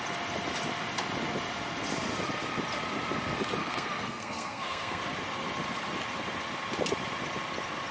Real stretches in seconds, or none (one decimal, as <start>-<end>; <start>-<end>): 0.0-3.6; 5.0-7.9